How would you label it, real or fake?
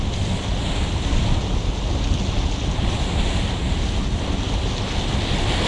real